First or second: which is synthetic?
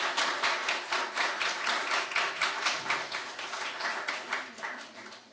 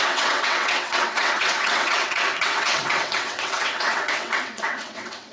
second